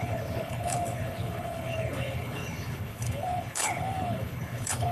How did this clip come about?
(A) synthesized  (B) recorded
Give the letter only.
A